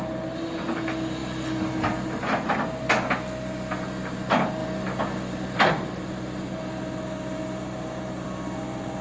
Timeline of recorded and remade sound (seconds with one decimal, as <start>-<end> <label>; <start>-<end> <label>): 0.0-9.0 recorded